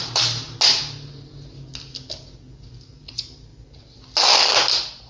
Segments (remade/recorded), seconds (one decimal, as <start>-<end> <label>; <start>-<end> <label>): 0.0-5.1 recorded